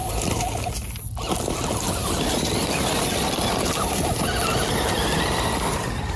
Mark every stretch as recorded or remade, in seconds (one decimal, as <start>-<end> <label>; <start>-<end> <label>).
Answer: 0.0-6.2 recorded